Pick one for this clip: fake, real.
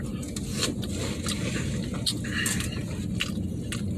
real